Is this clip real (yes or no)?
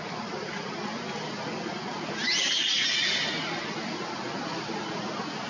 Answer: yes